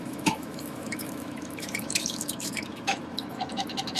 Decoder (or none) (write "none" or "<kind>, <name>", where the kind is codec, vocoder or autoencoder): autoencoder, DAC-VAE